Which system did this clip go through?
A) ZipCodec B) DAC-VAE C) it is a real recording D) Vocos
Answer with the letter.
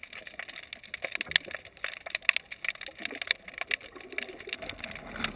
C